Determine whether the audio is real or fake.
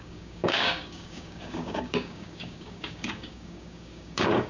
fake